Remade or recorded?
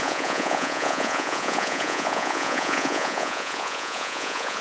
remade